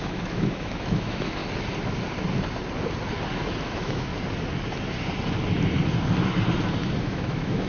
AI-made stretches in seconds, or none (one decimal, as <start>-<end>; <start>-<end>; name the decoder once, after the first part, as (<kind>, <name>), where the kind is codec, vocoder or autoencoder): 0.0-1.4 (autoencoder, DAC-VAE); 3.6-4.1; 7.0-7.7